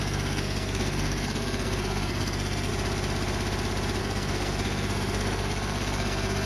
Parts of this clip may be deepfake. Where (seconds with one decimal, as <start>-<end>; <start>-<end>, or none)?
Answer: 0.0-2.7; 4.0-6.5